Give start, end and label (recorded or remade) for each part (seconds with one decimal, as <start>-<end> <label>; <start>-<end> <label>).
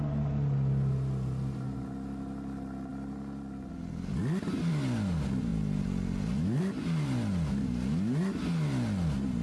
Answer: 0.0-9.4 recorded